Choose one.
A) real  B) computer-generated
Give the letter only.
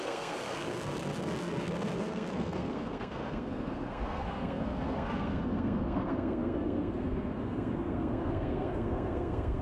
B